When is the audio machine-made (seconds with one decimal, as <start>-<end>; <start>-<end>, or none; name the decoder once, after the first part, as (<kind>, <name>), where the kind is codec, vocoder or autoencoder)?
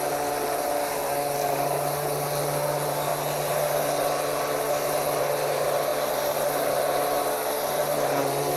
0.0-3.1 (vocoder, BigVGAN v2); 5.2-8.6